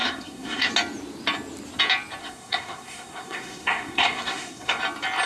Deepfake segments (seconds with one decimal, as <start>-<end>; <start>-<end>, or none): 0.0-0.7; 2.2-4.8

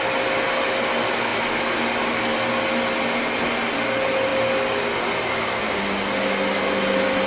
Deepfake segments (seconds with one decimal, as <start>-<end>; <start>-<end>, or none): none